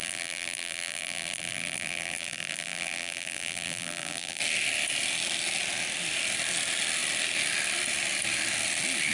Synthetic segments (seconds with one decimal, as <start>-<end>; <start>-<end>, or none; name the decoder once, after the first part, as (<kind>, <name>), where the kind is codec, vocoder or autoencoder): 0.0-4.4 (vocoder, BigVGAN v2)